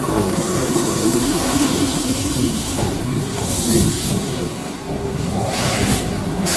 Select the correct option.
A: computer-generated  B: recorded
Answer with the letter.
A